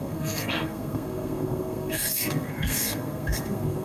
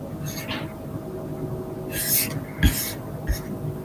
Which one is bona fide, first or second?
second